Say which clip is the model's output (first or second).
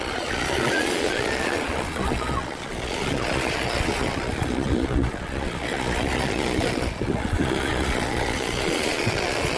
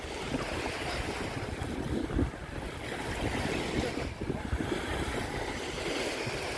first